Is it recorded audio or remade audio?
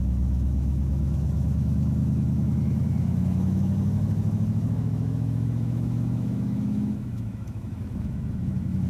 remade